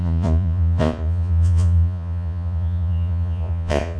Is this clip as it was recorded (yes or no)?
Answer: no